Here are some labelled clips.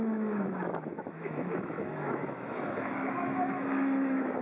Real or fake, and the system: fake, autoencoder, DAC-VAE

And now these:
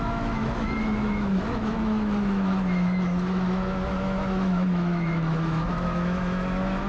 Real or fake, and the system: fake, autoencoder, DAC-VAE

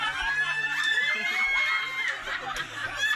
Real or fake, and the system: real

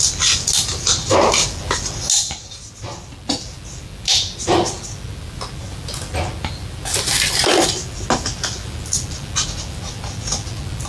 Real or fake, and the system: real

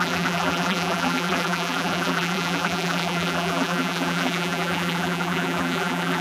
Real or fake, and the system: fake, vocoder, BigVGAN v2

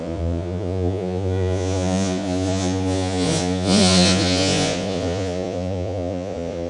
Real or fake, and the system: fake, vocoder, Vocos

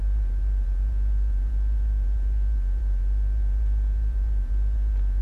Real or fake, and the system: fake, vocoder, BigVGAN v2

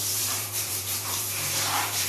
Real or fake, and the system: fake, vocoder, BigVGAN v2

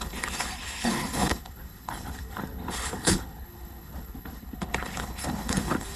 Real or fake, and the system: fake, codec, HILCodec